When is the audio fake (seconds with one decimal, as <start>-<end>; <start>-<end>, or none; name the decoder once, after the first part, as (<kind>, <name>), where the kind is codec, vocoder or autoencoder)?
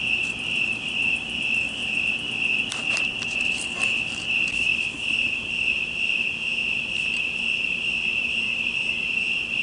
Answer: 0.0-1.8 (vocoder, BigVGAN v2); 2.9-9.6